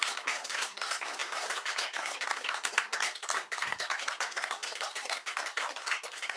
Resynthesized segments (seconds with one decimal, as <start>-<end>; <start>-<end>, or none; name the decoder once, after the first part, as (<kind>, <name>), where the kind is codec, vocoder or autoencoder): 0.0-6.4 (codec, SNAC)